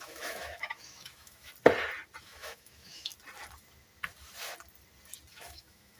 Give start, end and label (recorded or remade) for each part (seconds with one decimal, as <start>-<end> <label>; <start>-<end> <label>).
0.0-1.5 remade; 1.5-2.2 recorded; 2.2-3.1 remade; 3.1-5.3 recorded; 5.3-6.0 remade